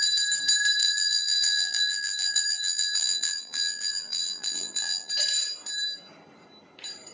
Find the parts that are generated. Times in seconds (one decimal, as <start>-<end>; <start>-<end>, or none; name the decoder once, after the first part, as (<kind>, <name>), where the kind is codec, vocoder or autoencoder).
0.8-5.1 (vocoder, BigVGAN v2)